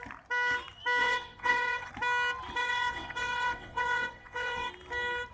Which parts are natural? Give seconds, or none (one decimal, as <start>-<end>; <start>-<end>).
0.0-1.0; 1.9-2.6; 4.7-5.3